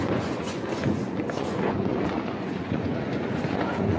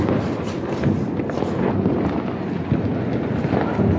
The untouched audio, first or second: second